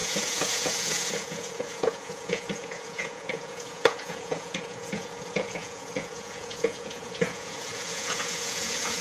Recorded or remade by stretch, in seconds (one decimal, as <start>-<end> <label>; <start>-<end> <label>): 0.0-9.0 remade